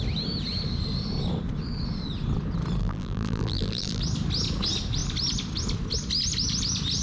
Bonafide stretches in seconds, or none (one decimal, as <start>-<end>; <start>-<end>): 0.0-2.8; 4.0-7.0